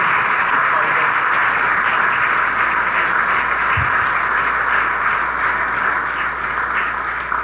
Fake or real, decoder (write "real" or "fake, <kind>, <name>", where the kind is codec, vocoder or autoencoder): real